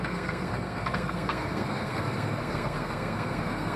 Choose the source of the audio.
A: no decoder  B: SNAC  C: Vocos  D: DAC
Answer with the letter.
B